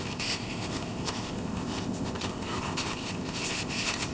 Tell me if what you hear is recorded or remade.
remade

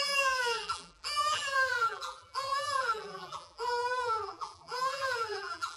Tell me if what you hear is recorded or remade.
remade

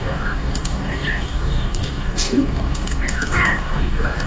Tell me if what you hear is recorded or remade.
remade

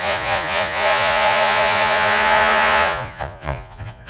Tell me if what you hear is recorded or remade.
remade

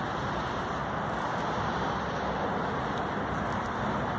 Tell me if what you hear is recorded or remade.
recorded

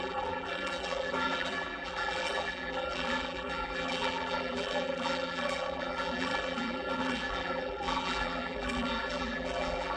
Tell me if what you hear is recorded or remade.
remade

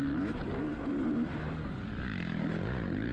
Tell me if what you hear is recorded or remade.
recorded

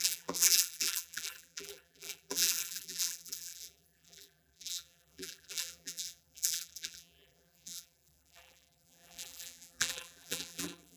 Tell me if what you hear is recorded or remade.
remade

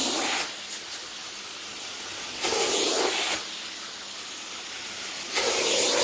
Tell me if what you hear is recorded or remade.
recorded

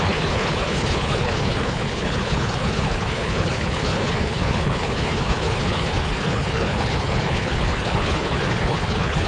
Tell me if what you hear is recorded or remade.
remade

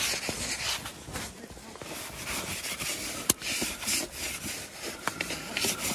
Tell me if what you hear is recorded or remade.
recorded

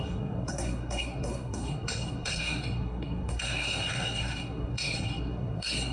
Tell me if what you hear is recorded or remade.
remade